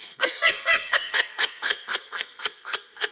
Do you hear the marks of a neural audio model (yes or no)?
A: yes